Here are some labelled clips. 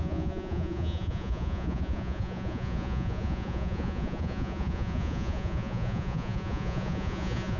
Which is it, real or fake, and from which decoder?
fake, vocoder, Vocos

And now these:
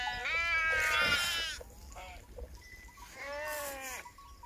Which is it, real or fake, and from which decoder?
real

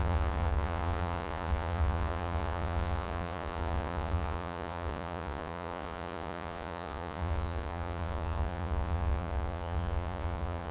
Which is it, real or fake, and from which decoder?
fake, vocoder, Vocos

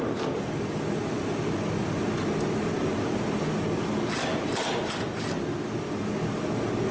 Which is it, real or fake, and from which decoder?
real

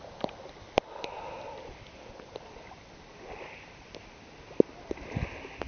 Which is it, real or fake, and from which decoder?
real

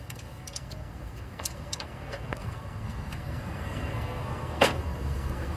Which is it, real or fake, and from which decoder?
fake, codec, SNAC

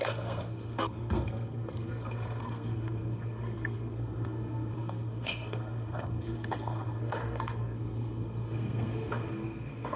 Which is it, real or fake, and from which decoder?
fake, codec, SNAC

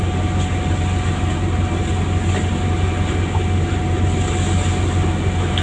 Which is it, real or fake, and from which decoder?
real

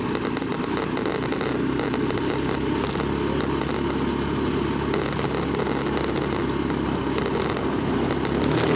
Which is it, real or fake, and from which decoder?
real